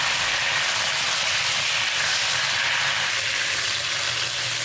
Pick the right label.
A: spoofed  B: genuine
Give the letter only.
B